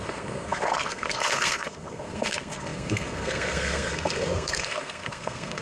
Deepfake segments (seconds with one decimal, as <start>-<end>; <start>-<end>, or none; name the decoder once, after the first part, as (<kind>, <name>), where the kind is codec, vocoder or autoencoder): 0.0-5.6 (codec, SNAC)